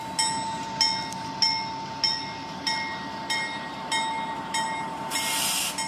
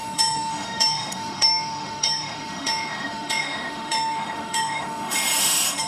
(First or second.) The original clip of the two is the first